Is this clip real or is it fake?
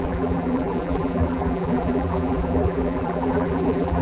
fake